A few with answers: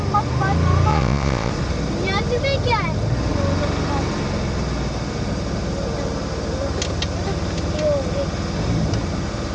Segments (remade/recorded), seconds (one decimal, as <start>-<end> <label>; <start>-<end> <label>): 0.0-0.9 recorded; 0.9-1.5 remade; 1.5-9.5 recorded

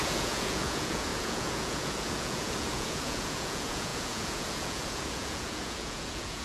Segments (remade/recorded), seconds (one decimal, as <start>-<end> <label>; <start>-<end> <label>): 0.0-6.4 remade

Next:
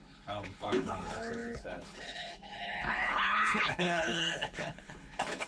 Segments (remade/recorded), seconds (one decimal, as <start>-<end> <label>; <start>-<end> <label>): 0.0-5.5 remade

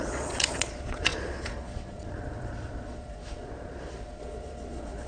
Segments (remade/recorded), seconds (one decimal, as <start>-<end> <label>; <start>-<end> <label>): 0.0-5.1 remade

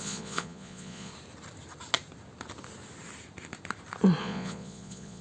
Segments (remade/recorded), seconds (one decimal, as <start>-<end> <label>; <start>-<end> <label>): 0.0-1.1 remade; 1.1-4.2 recorded; 4.2-5.2 remade

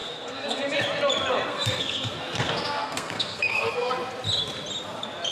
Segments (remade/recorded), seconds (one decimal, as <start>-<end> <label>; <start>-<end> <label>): 0.0-0.6 remade; 0.6-1.5 recorded; 1.5-3.9 remade; 3.9-5.3 recorded